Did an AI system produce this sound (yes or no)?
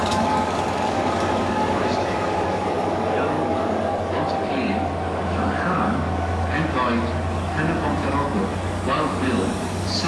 yes